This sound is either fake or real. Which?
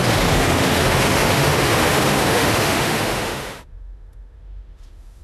fake